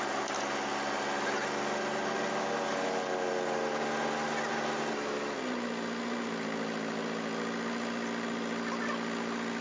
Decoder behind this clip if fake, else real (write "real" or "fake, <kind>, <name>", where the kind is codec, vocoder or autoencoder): real